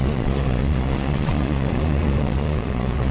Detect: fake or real fake